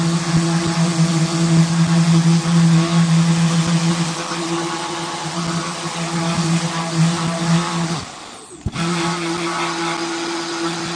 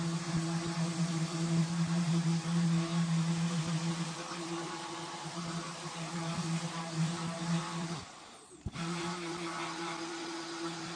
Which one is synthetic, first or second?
second